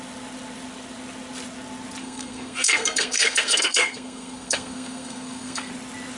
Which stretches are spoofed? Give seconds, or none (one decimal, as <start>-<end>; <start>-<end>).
2.0-5.7